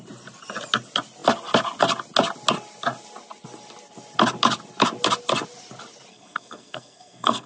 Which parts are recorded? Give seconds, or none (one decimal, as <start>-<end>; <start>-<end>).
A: 0.0-6.1